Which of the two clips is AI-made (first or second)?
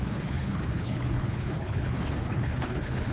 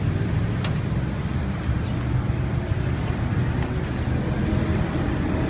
first